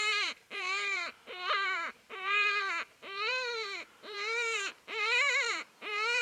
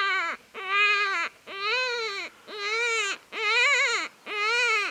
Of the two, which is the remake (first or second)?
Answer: first